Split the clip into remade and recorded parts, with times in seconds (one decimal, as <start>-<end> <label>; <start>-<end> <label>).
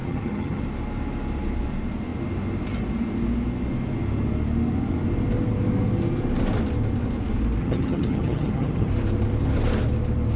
0.0-0.6 remade; 0.6-7.6 recorded; 7.6-8.9 remade; 8.9-10.4 recorded